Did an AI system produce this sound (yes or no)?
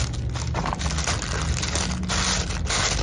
no